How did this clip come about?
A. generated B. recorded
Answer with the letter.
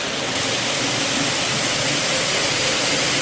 B